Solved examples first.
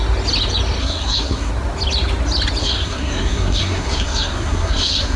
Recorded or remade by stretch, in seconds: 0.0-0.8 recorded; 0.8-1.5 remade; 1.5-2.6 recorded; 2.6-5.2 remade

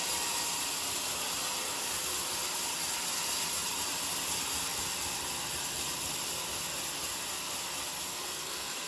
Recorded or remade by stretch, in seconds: 0.0-8.1 recorded; 8.1-8.9 remade

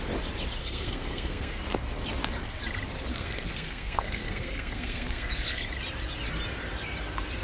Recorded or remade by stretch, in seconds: 0.0-0.6 recorded; 0.6-1.6 remade; 1.6-3.1 recorded; 3.1-5.6 remade; 5.6-7.4 recorded